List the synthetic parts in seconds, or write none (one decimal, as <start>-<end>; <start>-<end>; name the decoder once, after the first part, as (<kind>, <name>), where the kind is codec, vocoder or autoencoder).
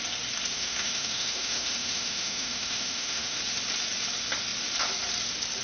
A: 0.5-3.4 (autoencoder, DAC-VAE)